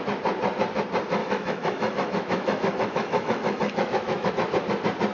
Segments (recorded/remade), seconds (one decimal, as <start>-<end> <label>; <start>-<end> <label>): 0.0-1.2 recorded; 1.2-4.3 remade; 4.3-5.1 recorded